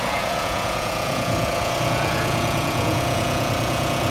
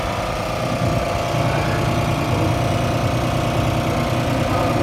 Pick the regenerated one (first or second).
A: first